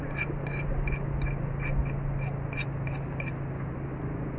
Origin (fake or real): real